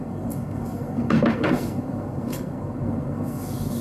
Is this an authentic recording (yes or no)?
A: no